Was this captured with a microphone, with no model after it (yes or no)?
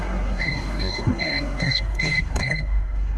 no